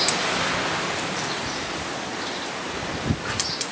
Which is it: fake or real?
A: real